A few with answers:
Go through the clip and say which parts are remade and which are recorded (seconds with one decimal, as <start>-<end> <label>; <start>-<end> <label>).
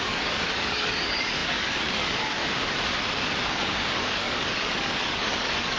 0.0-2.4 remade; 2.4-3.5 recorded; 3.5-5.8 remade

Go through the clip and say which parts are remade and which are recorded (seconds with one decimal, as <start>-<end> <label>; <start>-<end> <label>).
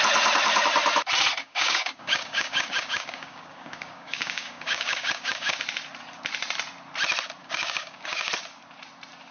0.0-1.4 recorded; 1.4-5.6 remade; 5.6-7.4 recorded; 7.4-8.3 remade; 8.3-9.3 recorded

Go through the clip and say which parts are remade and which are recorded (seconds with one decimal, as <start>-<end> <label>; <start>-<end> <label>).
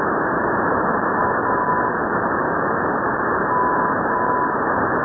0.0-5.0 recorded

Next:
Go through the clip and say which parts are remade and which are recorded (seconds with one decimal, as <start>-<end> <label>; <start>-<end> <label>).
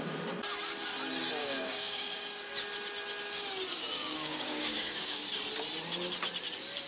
0.0-1.4 recorded; 1.4-2.5 remade; 2.5-3.7 recorded; 3.7-5.2 remade; 5.2-6.9 recorded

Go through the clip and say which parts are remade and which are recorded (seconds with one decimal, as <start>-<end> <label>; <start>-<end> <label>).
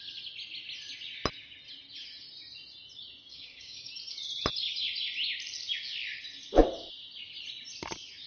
0.0-3.3 recorded; 3.3-3.9 remade; 3.9-8.3 recorded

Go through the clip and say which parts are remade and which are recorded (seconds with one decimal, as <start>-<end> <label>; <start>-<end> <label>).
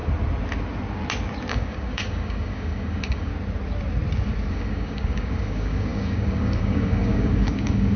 0.0-1.5 recorded; 1.5-3.3 remade; 3.3-4.5 recorded; 4.5-8.0 remade